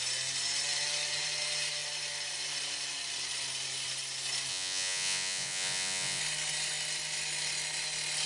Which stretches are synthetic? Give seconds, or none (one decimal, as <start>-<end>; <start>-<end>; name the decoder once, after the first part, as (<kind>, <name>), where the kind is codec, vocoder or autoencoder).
4.5-6.2 (vocoder, Vocos)